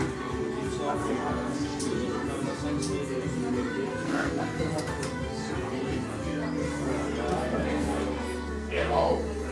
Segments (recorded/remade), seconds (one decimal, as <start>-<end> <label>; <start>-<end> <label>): 0.0-1.0 recorded; 1.0-1.8 remade; 1.8-3.9 recorded; 3.9-4.8 remade; 4.8-7.3 recorded; 7.3-9.1 remade; 9.1-9.5 recorded